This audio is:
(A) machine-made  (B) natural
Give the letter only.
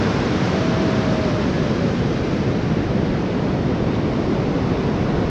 B